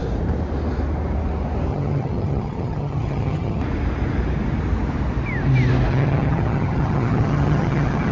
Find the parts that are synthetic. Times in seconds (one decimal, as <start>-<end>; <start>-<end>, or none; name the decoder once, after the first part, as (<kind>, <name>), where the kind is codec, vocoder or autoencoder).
1.7-3.6 (vocoder, HiFi-GAN); 5.9-8.1